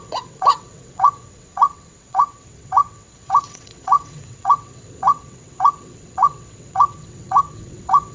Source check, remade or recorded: remade